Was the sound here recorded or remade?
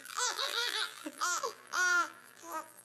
remade